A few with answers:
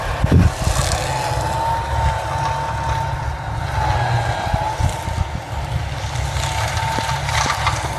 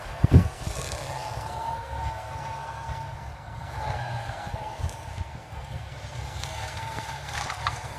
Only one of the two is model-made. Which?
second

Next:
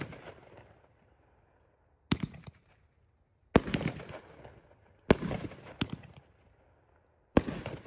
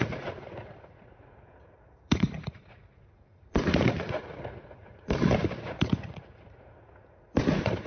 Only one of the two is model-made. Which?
second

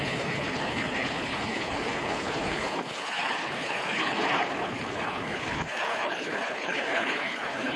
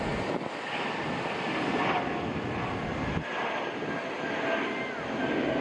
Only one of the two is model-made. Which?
first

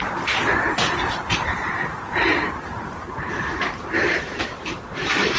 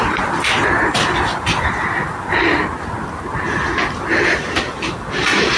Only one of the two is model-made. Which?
first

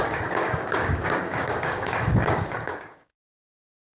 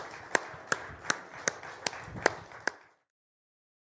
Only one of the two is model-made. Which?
first